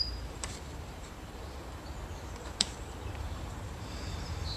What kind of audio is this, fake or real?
fake